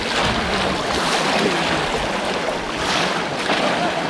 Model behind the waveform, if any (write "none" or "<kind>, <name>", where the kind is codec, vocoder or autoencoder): none